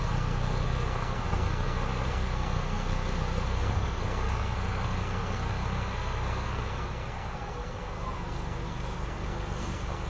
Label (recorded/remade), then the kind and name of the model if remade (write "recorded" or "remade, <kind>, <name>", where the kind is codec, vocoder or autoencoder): remade, codec, SNAC